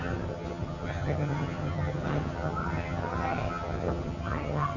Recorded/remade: remade